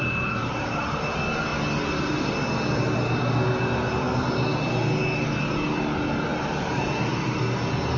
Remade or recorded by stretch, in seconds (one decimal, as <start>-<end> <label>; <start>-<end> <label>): 0.0-0.4 recorded; 0.4-1.0 remade; 1.0-6.3 recorded; 6.3-7.4 remade; 7.4-8.0 recorded